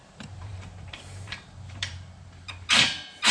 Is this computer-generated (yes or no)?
yes